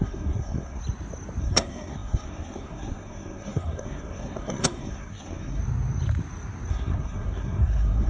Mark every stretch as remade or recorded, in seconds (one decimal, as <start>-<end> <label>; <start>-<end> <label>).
0.0-0.8 remade; 0.8-1.4 recorded; 1.4-5.6 remade; 5.6-6.7 recorded; 6.7-8.1 remade